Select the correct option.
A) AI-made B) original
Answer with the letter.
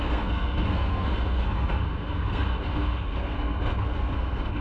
A